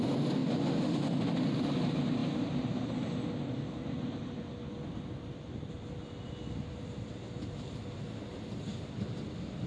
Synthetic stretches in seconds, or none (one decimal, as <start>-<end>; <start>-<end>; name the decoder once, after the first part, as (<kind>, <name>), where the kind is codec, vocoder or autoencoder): none